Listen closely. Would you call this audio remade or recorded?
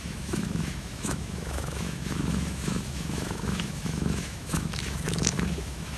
remade